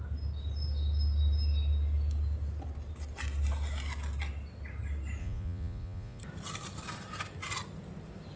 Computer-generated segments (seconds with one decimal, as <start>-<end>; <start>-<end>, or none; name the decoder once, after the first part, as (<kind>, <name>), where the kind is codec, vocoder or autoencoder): 5.2-6.2 (vocoder, Vocos)